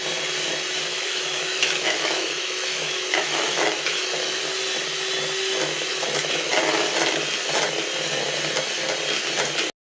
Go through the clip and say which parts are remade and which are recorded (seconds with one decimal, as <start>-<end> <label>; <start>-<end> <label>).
0.0-0.9 recorded; 0.9-4.4 remade; 4.4-5.9 recorded; 5.9-6.5 remade; 6.5-9.8 recorded